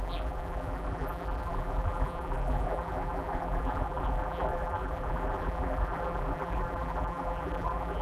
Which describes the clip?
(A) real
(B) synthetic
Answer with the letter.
B